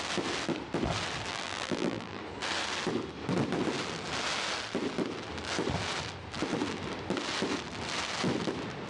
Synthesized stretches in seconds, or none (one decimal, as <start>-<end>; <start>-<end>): 1.3-2.2